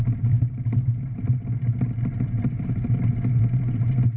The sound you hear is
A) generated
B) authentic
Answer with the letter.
B